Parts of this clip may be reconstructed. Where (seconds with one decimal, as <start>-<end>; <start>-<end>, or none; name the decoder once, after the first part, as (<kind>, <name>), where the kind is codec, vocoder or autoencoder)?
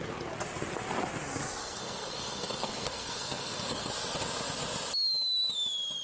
1.6-3.9 (codec, SNAC)